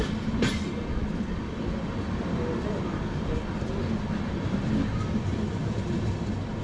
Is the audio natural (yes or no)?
yes